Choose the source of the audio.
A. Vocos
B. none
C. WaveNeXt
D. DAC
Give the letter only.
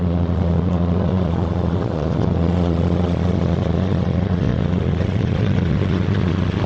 A